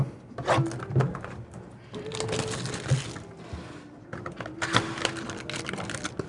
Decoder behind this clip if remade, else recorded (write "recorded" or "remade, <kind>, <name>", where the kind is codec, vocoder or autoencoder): recorded